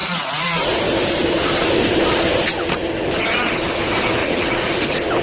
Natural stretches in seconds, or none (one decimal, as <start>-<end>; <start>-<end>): 0.8-4.2; 4.7-5.2